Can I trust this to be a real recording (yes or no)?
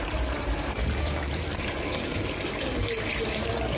no